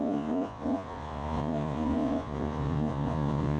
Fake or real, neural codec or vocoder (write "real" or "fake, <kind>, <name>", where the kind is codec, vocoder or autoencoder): fake, vocoder, Vocos